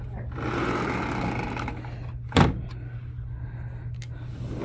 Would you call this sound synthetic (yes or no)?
no